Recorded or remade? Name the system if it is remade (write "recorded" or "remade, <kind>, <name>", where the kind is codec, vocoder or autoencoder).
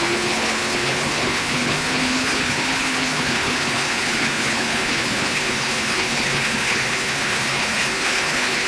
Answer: remade, codec, HILCodec